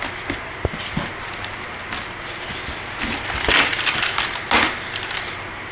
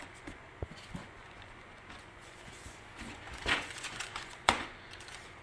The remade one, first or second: second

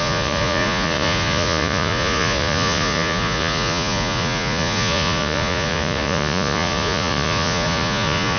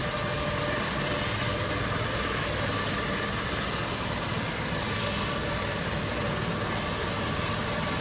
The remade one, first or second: first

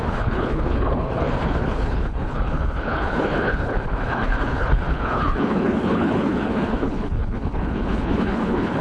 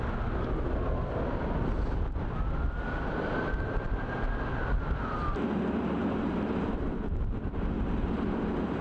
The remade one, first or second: first